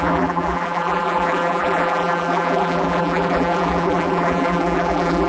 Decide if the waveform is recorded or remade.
remade